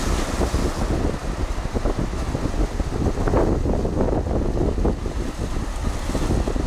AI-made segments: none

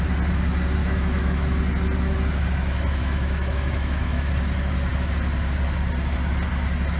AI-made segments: 0.8-1.6 (autoencoder, DAC-VAE); 3.0-4.3